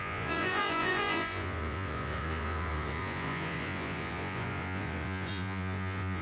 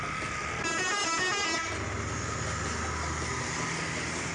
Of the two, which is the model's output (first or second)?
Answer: first